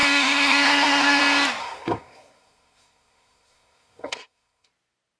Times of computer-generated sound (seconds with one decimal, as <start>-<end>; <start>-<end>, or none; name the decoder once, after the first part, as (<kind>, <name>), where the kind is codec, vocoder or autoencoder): 0.0-1.2 (codec, SNAC); 1.6-4.7